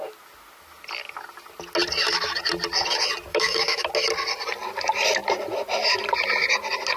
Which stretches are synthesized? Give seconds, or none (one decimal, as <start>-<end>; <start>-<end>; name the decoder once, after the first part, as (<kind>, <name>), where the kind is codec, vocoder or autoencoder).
3.3-3.9 (autoencoder, DAC-VAE)